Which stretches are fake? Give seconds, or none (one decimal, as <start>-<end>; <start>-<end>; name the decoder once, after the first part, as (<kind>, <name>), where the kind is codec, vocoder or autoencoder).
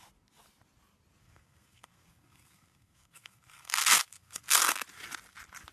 1.2-4.6 (codec, SNAC)